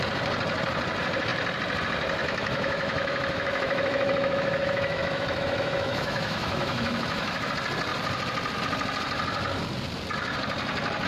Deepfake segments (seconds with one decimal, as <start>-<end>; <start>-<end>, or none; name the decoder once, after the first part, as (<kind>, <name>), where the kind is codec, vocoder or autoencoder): 2.2-7.5 (autoencoder, DAC-VAE)